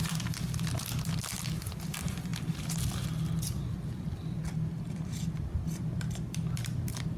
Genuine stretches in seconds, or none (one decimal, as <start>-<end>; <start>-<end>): 0.0-7.2